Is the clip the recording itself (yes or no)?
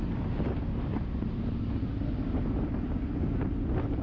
yes